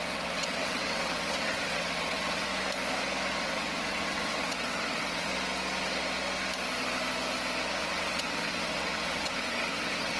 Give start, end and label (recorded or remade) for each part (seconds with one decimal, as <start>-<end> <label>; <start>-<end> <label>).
0.0-2.5 remade; 2.5-3.4 recorded; 3.4-5.3 remade; 5.3-7.8 recorded; 7.8-10.2 remade